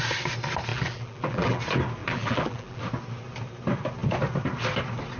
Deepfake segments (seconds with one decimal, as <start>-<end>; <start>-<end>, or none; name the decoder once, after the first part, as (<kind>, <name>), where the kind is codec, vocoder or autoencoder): 0.7-1.6 (vocoder, BigVGAN v2); 2.0-2.8